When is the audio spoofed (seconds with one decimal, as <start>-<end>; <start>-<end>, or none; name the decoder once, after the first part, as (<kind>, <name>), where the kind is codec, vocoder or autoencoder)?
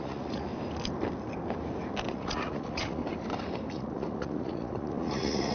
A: 0.0-0.5 (vocoder, Vocos); 2.1-3.0; 3.7-5.5